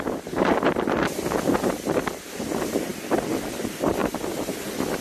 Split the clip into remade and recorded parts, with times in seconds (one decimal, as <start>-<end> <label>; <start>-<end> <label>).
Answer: 0.0-5.0 recorded